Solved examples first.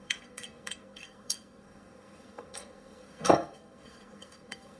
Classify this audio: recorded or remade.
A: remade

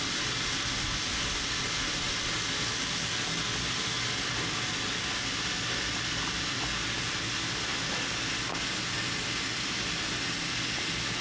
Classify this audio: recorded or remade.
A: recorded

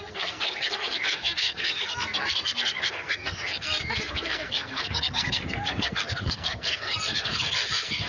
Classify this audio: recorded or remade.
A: remade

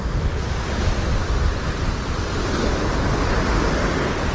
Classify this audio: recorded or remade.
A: recorded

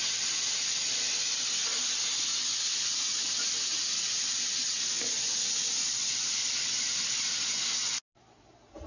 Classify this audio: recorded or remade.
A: recorded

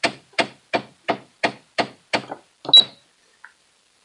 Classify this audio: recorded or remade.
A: recorded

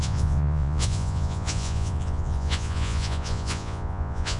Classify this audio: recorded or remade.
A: remade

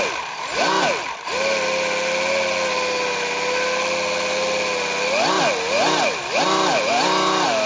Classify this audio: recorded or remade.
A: recorded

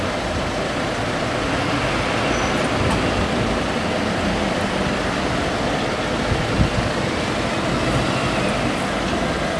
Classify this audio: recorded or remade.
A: recorded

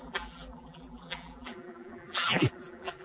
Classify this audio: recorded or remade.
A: remade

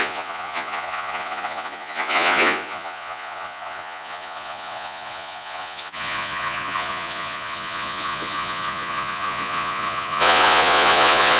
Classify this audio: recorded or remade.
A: remade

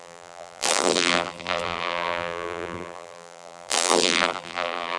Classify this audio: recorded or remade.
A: remade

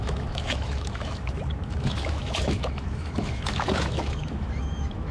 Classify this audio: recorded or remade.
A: remade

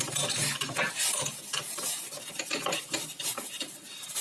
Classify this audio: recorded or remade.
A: recorded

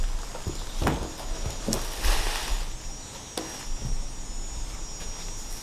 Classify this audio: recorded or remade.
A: recorded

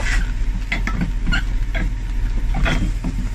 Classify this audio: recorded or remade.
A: recorded